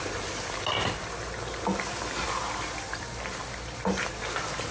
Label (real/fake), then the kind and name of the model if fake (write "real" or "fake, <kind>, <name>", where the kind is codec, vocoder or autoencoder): real